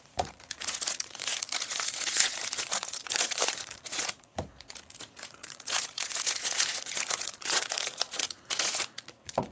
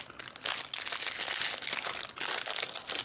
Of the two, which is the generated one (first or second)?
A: first